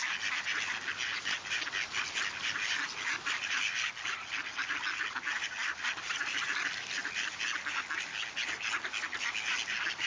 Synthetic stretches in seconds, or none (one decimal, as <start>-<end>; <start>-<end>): none